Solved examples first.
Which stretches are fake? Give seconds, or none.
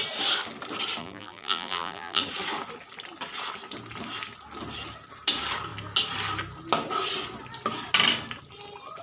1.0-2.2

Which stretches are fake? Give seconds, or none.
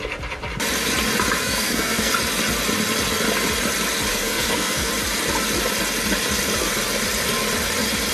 1.4-2.1; 4.1-4.9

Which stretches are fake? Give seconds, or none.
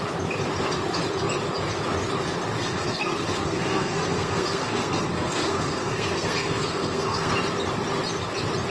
2.6-7.3